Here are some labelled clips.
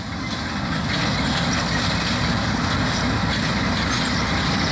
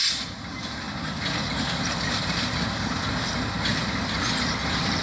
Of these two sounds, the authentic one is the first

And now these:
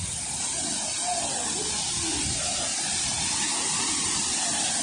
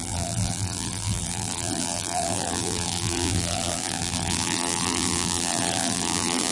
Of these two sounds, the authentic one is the first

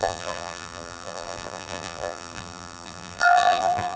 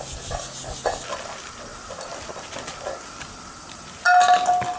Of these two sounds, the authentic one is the second